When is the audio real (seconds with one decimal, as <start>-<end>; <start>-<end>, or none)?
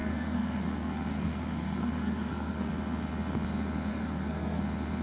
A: 2.7-3.9; 4.6-5.0